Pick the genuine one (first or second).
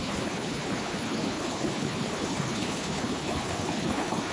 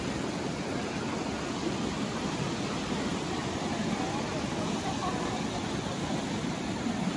second